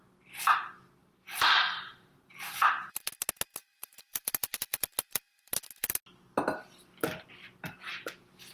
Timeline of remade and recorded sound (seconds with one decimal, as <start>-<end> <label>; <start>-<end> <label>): 0.0-1.0 recorded; 1.0-3.1 remade; 3.1-3.6 recorded; 3.6-6.0 remade; 6.0-8.5 recorded